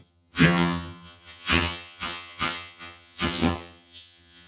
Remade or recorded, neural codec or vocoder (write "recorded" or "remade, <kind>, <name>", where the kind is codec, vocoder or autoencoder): remade, vocoder, HiFi-GAN